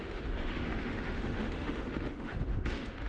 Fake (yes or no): yes